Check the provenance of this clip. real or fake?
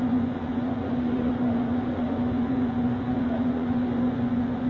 fake